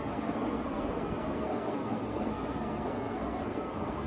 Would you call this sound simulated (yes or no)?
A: yes